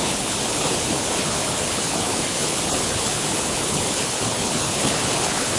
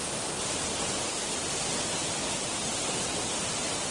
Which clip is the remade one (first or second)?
first